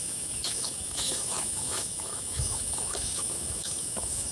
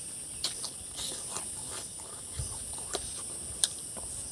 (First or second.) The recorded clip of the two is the second